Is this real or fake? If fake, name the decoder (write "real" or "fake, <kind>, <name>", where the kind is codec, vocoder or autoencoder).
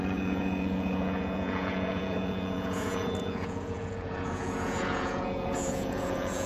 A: fake, vocoder, Vocos